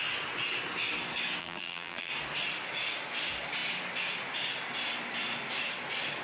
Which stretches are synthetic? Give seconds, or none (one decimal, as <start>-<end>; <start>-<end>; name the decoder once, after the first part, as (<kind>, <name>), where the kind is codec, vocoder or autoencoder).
1.4-2.1 (vocoder, BigVGAN v2)